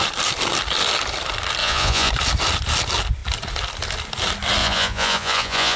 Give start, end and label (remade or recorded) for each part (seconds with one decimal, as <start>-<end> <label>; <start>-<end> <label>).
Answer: 0.0-1.6 recorded; 1.6-2.1 remade; 2.1-4.6 recorded; 4.6-5.8 remade